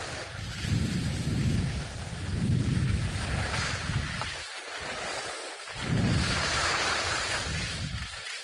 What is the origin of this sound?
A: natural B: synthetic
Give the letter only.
B